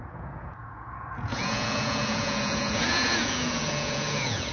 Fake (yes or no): yes